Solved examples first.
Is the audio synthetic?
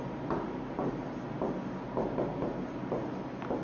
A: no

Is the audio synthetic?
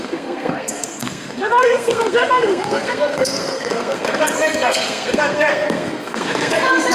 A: yes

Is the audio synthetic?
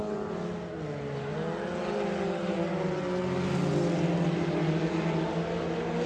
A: no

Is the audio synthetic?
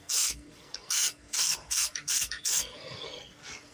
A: yes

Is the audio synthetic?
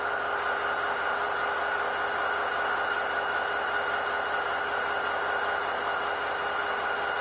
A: no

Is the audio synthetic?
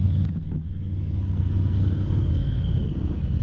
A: yes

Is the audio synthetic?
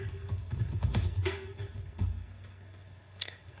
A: yes